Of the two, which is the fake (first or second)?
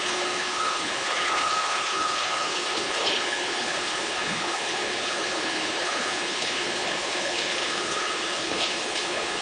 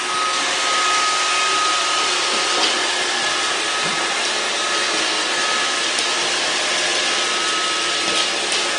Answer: first